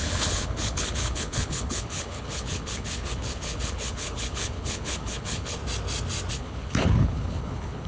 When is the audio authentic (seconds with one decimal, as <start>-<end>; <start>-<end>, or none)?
5.6-6.3